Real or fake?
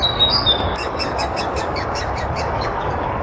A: fake